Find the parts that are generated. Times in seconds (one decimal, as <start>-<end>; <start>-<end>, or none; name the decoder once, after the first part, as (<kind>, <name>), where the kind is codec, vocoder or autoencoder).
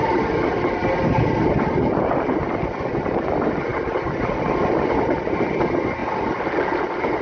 none